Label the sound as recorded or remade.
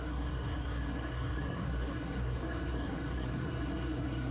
remade